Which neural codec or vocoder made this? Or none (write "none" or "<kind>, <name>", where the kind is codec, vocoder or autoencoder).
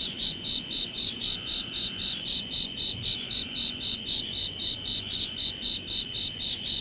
vocoder, Vocos